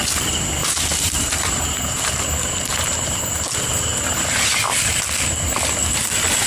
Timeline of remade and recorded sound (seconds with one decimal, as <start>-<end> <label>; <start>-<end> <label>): 0.0-0.6 recorded; 0.6-2.7 remade; 2.7-6.5 recorded